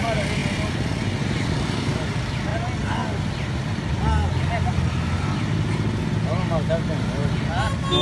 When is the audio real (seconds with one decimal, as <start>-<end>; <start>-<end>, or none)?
0.0-8.0